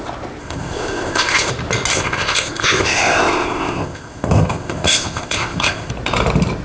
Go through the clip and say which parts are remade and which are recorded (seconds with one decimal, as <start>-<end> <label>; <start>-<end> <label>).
0.0-0.4 recorded; 0.4-1.5 remade; 1.5-1.9 recorded; 1.9-5.9 remade; 5.9-6.6 recorded

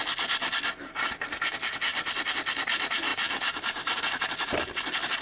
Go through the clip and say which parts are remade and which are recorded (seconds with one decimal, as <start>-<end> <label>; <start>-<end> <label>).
0.0-3.1 recorded; 3.1-4.0 remade; 4.0-5.2 recorded

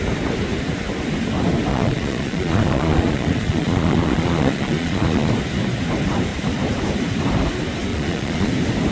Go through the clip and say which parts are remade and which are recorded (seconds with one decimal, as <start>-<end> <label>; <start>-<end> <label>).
0.0-1.7 recorded; 1.7-5.3 remade; 5.3-7.9 recorded; 7.9-8.5 remade; 8.5-8.9 recorded

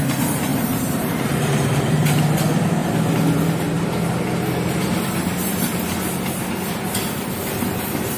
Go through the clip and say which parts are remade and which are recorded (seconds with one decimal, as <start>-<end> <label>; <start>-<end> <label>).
0.0-0.5 recorded; 0.5-2.2 remade; 2.2-8.2 recorded